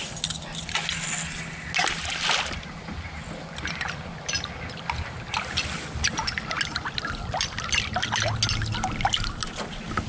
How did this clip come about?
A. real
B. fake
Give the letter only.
A